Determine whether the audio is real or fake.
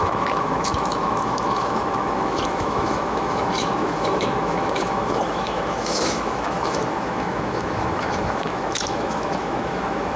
fake